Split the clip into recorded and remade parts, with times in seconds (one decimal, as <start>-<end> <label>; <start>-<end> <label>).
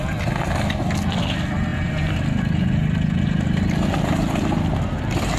0.0-5.4 recorded